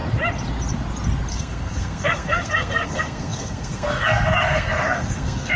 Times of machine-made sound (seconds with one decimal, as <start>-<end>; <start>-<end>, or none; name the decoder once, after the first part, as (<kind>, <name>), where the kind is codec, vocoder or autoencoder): 1.3-5.6 (codec, SNAC)